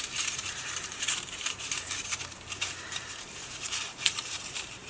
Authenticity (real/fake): fake